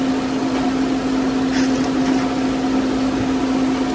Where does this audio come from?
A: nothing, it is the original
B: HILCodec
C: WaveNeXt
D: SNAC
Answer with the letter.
A